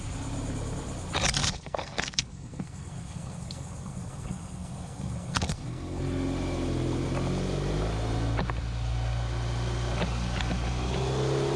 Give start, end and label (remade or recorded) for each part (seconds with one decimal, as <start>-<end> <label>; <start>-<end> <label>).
0.0-1.4 recorded; 1.4-6.0 remade; 6.0-11.6 recorded